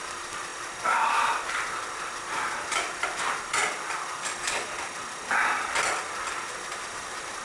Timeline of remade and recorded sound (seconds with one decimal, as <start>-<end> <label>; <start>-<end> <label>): 0.0-3.6 remade; 3.6-6.5 recorded; 6.5-7.4 remade